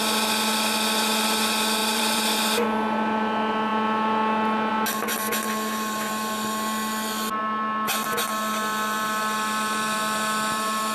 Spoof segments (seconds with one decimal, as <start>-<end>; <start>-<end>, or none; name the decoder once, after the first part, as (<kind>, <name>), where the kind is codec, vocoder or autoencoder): 1.8-2.4 (vocoder, BigVGAN v2)